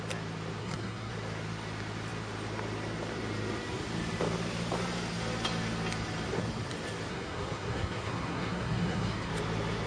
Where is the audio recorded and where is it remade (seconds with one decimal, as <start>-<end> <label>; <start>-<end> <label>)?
0.0-0.6 recorded; 0.6-1.1 remade; 1.1-7.1 recorded; 7.1-9.3 remade; 9.3-9.9 recorded